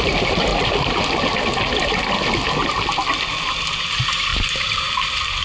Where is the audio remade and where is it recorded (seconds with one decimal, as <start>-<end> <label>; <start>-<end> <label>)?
0.0-0.5 remade; 0.5-3.7 recorded; 3.7-5.4 remade